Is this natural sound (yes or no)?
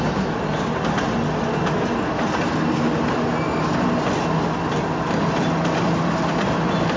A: yes